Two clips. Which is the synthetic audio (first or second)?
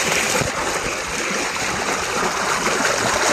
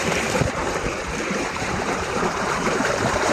second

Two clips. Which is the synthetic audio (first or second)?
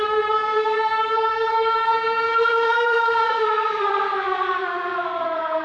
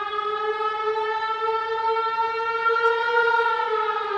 first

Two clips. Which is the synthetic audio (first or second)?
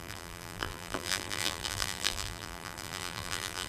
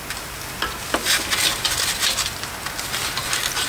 first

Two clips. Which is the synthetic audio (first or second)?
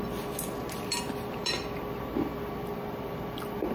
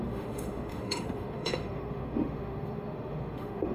second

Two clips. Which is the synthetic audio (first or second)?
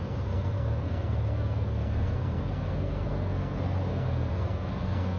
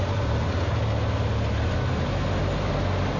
first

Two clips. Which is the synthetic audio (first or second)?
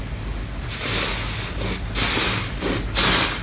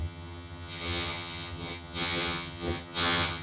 second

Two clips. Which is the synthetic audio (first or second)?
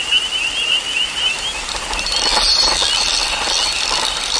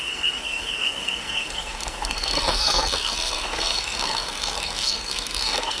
second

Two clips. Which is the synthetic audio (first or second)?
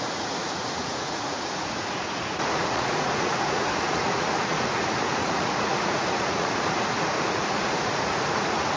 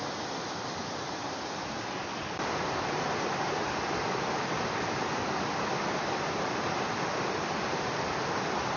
first